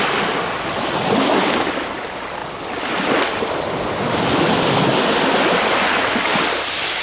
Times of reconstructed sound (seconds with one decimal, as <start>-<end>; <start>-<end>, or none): none